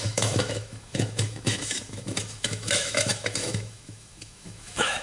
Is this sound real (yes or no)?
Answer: no